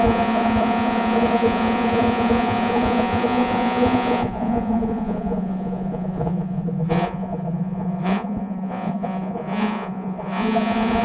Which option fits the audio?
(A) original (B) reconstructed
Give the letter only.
B